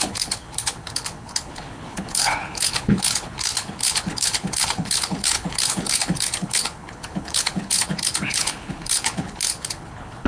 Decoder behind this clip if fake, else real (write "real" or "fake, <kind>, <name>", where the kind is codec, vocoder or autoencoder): fake, codec, HILCodec